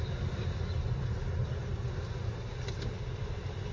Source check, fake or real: real